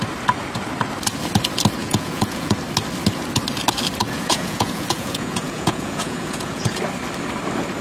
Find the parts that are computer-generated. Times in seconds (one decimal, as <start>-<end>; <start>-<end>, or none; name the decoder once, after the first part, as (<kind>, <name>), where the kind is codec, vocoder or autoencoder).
1.8-2.6 (vocoder, Vocos); 4.0-6.8